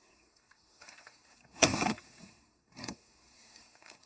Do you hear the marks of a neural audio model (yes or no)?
yes